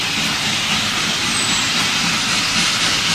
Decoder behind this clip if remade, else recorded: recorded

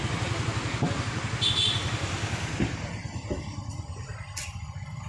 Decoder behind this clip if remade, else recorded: recorded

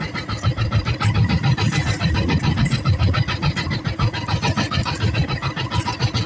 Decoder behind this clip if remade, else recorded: remade, vocoder, Vocos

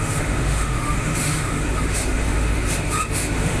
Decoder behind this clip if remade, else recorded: remade, autoencoder, DAC-VAE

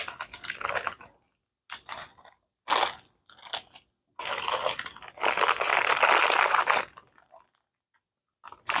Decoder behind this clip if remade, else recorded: recorded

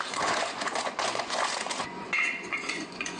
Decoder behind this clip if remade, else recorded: remade, vocoder, Vocos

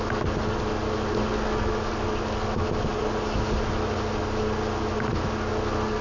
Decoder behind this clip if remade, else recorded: recorded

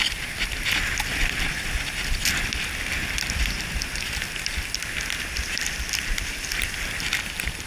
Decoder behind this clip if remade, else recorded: recorded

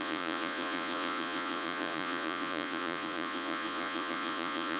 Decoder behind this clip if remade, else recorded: remade, vocoder, Vocos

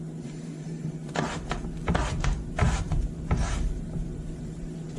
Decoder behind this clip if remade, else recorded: remade, vocoder, BigVGAN v2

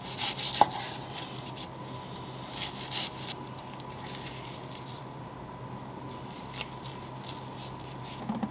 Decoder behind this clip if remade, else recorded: recorded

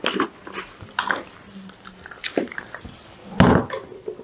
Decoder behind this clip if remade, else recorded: recorded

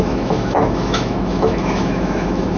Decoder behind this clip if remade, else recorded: remade, autoencoder, DAC-VAE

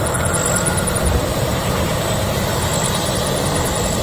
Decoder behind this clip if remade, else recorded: recorded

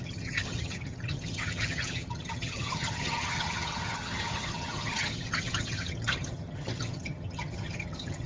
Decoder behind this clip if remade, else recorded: remade, vocoder, HiFi-GAN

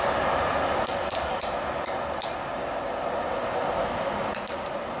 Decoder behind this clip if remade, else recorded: recorded